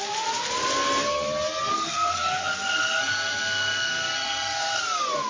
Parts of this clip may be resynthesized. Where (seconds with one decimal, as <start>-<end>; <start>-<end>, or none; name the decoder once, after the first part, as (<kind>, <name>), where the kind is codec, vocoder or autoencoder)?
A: 1.7-4.8 (codec, SNAC)